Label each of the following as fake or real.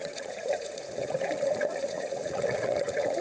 fake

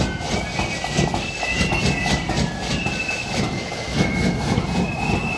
real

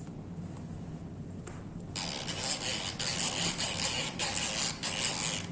real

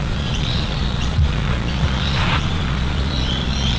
fake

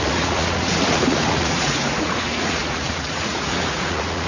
fake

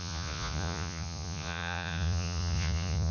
fake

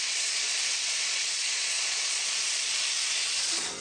fake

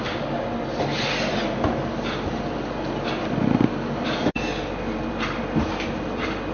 real